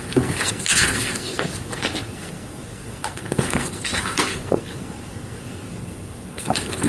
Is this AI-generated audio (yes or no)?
yes